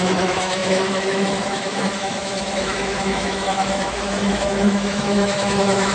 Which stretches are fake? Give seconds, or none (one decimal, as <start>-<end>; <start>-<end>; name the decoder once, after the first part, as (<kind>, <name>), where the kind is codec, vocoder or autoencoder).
0.0-5.9 (autoencoder, DAC-VAE)